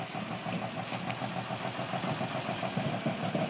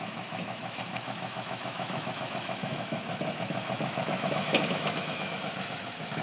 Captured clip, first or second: first